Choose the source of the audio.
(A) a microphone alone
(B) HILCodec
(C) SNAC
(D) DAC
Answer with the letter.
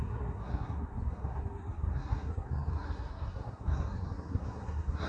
C